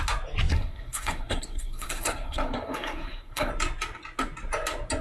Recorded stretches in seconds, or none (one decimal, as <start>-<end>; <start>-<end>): 0.0-0.5; 3.5-5.0